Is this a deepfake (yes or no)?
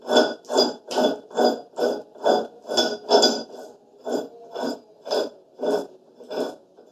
no